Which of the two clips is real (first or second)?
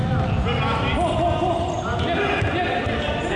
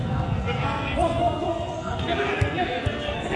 first